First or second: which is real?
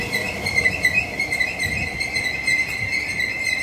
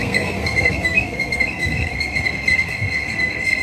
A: first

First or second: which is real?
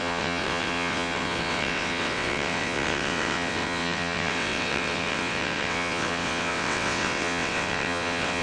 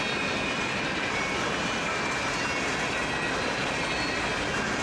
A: second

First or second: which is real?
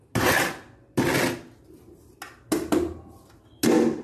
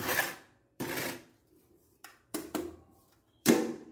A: first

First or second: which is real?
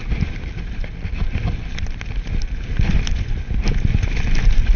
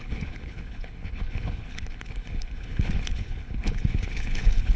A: first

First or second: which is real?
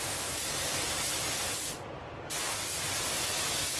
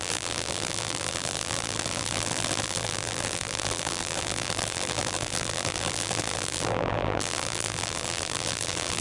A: first